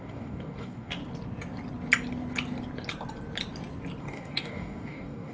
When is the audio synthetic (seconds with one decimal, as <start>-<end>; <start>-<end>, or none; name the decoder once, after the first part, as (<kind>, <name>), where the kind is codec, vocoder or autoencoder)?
0.0-1.0 (codec, DAC); 4.0-5.3